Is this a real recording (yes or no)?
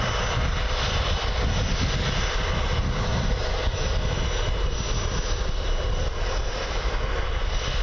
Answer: yes